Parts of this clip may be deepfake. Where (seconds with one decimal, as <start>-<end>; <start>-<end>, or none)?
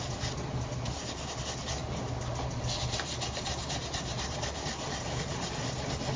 none